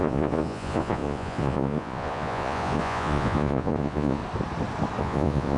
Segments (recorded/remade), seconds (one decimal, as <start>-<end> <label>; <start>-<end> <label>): 0.0-4.2 remade; 4.2-5.0 recorded; 5.0-5.6 remade